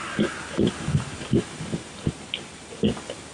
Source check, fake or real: real